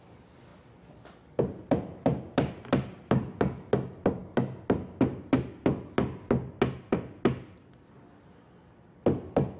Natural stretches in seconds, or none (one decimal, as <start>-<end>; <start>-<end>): 0.0-9.6